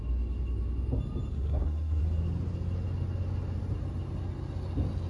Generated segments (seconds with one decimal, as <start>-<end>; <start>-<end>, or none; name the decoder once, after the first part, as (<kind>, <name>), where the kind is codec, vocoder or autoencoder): 1.3-2.0 (codec, SNAC)